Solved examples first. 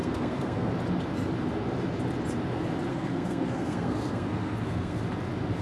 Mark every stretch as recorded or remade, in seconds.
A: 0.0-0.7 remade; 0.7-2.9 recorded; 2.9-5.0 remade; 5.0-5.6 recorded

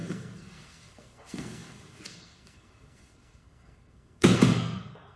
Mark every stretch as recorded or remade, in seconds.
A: 0.0-5.2 remade

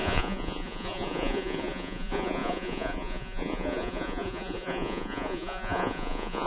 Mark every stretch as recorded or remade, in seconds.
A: 0.0-6.5 remade

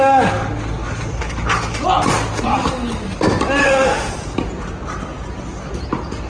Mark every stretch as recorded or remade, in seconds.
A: 0.0-3.6 recorded; 3.6-4.1 remade; 4.1-6.3 recorded